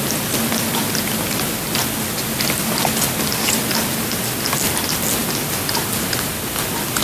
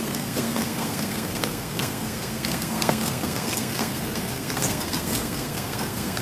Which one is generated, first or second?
second